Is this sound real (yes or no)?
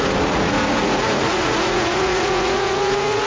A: no